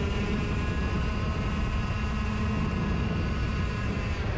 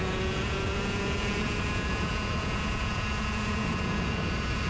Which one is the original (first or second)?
first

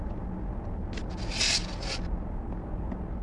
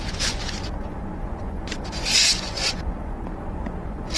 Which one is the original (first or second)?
first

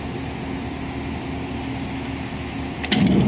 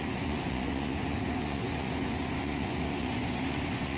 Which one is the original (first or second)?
first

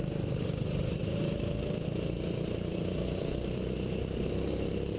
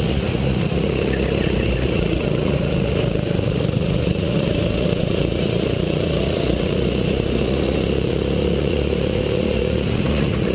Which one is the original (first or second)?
first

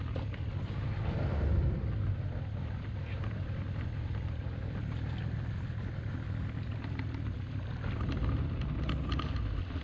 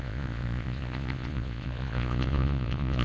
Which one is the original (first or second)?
first